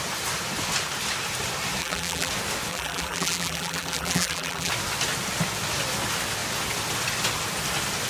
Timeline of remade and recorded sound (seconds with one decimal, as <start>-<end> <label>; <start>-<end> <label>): 0.0-1.8 recorded; 1.8-2.3 remade; 2.3-2.7 recorded; 2.7-4.7 remade; 4.7-8.1 recorded